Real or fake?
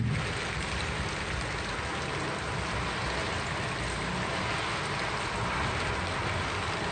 real